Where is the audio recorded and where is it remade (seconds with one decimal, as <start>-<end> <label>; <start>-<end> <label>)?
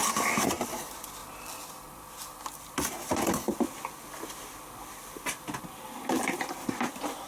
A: 0.0-0.6 recorded; 0.6-1.2 remade; 1.2-5.6 recorded; 5.6-7.3 remade